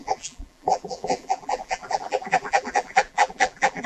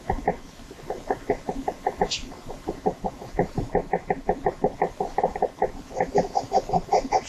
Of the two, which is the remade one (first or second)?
first